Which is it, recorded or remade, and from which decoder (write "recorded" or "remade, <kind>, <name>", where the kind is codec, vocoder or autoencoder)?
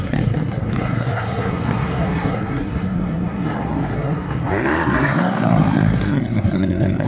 remade, codec, SNAC